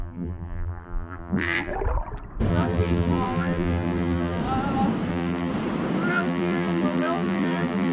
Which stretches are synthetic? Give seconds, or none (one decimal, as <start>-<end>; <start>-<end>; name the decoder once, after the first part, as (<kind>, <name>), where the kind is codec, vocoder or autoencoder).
0.0-1.7 (vocoder, BigVGAN v2); 2.5-4.4; 5.1-5.5; 6.1-7.9